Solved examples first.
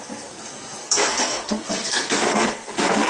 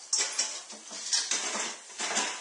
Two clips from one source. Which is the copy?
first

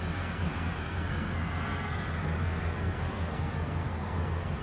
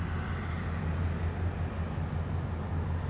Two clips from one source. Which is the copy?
first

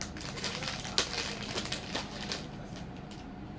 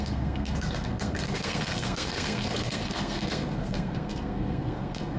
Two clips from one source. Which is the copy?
second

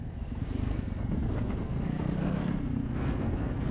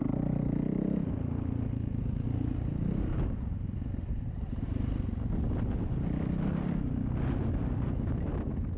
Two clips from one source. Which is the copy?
first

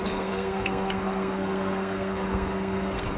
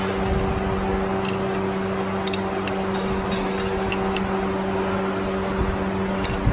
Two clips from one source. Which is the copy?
first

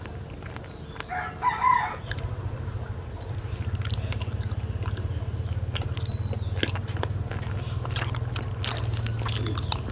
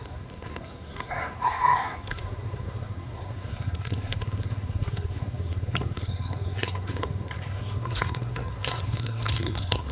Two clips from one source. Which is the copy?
second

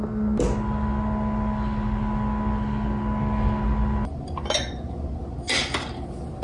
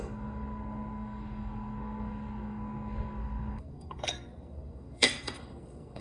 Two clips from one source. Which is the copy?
second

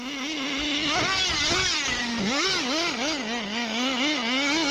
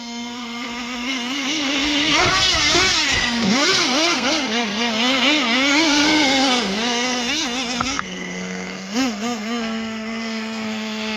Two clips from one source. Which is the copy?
second